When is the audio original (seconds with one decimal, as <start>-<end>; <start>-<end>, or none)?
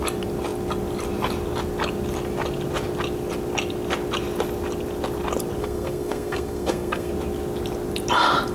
0.0-5.6; 7.1-8.5